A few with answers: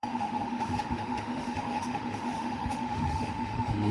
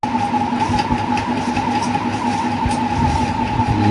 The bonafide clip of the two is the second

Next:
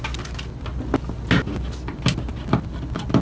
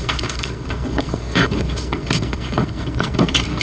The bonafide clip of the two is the first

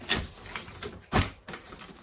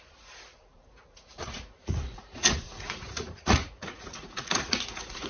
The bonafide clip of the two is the first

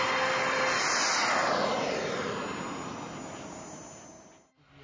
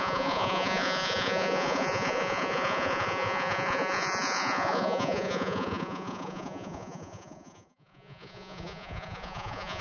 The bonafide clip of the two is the first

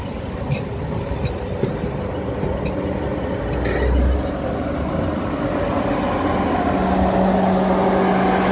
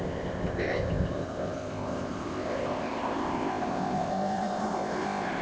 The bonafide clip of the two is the first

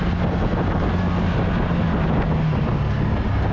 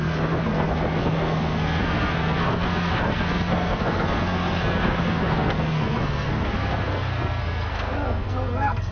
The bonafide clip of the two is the first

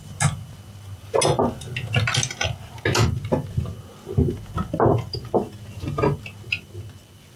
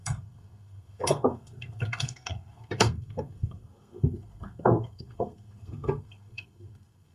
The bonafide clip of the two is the first